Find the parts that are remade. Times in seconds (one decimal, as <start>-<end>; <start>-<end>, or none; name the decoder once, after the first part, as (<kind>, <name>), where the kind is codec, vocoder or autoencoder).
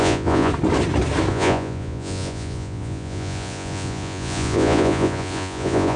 0.0-0.5 (vocoder, Vocos); 1.3-6.0